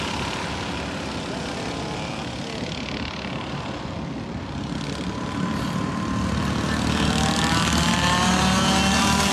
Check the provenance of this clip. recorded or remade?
recorded